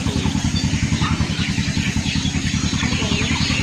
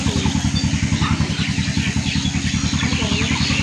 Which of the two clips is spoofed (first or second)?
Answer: first